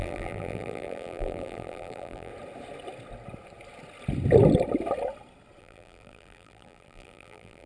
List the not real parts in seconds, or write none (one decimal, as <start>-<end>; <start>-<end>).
0.0-2.3; 5.6-7.7

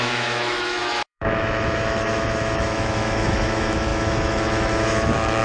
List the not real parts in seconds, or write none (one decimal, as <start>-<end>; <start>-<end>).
0.0-5.4

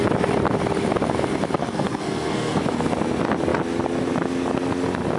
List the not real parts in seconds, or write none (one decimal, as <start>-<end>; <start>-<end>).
1.6-2.6

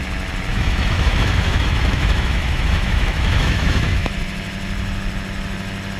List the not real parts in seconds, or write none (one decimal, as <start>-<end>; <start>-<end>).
0.5-4.1

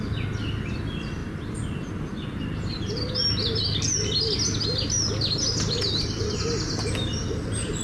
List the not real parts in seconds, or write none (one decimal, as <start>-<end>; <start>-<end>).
none

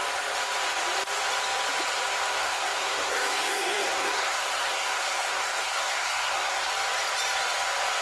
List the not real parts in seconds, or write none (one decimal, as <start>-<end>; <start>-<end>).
2.3-6.7